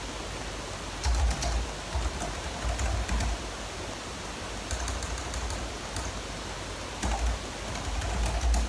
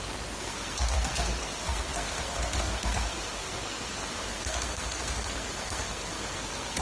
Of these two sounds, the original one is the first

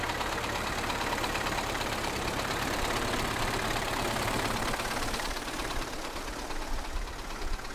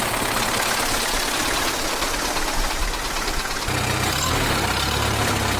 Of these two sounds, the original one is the second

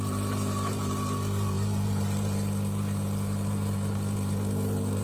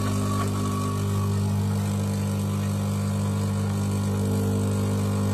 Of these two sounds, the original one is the second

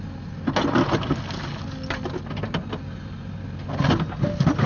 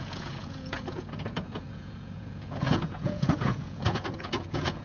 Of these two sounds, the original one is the first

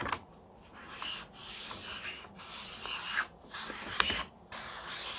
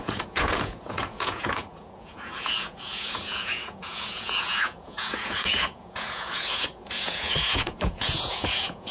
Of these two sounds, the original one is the first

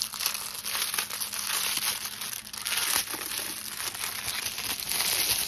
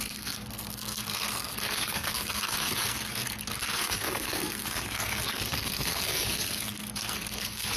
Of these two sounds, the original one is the first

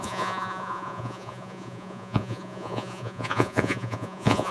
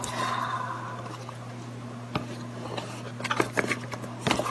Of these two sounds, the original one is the second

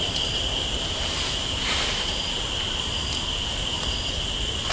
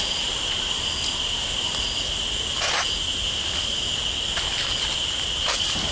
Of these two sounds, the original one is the second